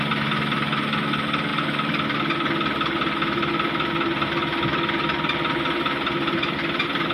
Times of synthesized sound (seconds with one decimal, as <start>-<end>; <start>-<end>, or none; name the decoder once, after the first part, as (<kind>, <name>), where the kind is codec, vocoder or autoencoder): none